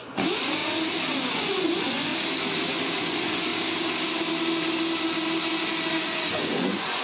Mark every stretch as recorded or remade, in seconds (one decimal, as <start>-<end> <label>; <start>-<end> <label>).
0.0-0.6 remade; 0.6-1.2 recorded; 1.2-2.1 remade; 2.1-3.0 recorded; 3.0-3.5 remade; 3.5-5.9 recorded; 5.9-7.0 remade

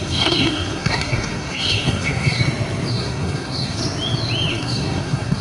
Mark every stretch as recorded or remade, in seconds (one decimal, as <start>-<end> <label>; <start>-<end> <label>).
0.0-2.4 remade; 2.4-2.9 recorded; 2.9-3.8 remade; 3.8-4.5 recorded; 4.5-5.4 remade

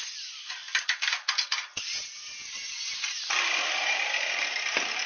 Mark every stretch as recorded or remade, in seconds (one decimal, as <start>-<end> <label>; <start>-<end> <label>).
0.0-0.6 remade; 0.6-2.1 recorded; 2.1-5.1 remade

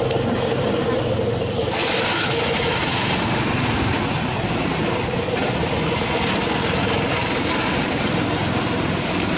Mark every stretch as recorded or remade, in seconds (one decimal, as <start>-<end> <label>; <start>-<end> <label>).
0.0-1.6 recorded; 1.6-2.8 remade; 2.8-9.4 recorded

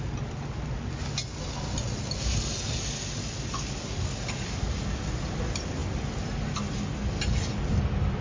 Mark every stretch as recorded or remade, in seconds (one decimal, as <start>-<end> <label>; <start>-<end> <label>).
0.0-8.2 recorded

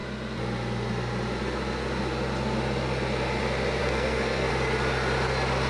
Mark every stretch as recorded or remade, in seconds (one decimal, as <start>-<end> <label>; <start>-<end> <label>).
0.0-3.8 recorded; 3.8-4.5 remade; 4.5-5.7 recorded